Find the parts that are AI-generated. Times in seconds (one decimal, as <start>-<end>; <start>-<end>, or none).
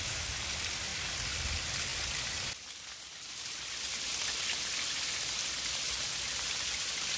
none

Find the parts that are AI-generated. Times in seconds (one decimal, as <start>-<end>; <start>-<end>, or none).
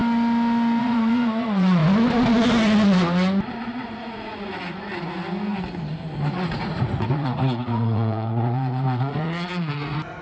0.8-1.8; 3.6-4.9; 6.5-10.2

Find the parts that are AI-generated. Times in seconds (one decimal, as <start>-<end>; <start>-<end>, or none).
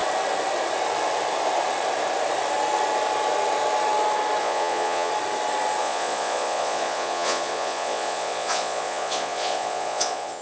4.4-5.1; 5.8-10.4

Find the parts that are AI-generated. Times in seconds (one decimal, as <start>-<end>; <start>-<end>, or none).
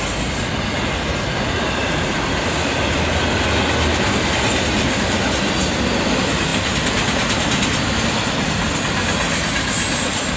none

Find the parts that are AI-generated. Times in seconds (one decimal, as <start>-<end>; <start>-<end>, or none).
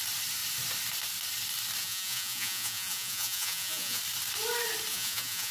1.8-4.0; 4.9-5.5